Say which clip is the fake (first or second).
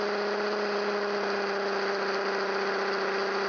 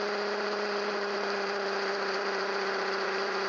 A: second